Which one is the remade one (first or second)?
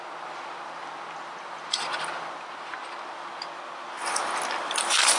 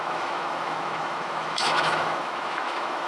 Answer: second